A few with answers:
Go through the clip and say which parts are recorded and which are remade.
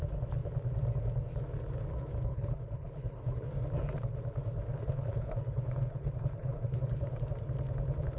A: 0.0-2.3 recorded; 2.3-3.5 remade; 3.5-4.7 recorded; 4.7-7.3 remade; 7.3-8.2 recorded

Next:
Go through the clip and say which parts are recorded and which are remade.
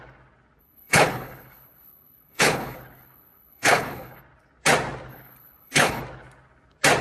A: 0.0-0.6 recorded; 0.6-4.2 remade; 4.2-5.1 recorded; 5.1-6.0 remade; 6.0-7.0 recorded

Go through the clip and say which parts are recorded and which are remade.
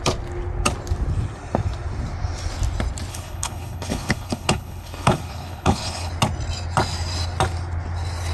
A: 0.0-3.1 recorded; 3.1-6.1 remade; 6.1-8.3 recorded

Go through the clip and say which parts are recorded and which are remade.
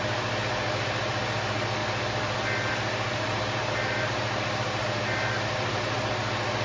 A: 0.0-6.6 recorded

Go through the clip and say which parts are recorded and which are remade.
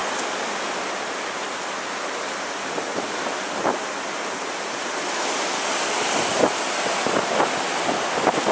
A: 0.0-8.5 recorded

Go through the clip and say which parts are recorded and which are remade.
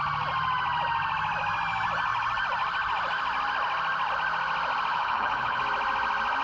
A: 0.0-4.9 recorded; 4.9-5.6 remade; 5.6-6.4 recorded